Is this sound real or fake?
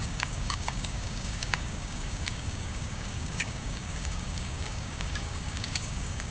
fake